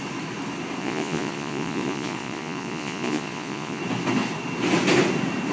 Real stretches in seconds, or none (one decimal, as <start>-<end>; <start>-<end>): 0.0-0.8; 3.8-5.5